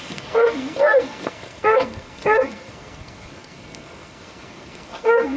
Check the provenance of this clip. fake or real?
fake